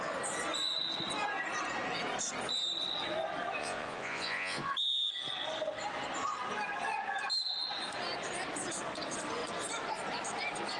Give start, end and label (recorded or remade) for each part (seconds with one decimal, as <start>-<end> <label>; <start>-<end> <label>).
0.0-3.6 recorded; 3.6-4.7 remade; 4.7-10.8 recorded